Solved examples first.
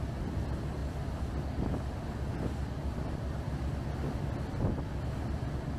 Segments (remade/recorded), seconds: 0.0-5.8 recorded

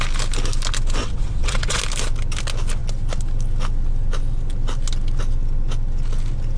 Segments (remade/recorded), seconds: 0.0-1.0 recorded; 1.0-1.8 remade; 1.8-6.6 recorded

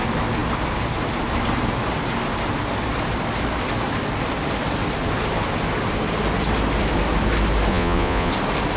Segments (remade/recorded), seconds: 0.0-7.7 recorded; 7.7-8.3 remade; 8.3-8.8 recorded

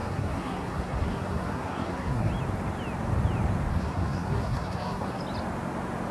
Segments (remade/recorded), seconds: 0.0-2.3 remade; 2.3-3.7 recorded; 3.7-5.2 remade; 5.2-6.1 recorded